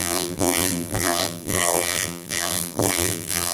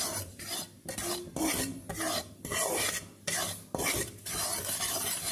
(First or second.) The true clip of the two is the second